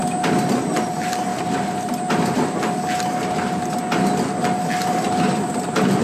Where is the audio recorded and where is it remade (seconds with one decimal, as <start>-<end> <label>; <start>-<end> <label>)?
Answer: 0.0-6.0 recorded